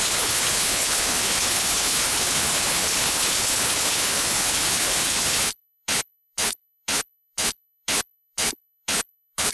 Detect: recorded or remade remade